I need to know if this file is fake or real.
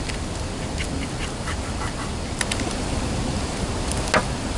real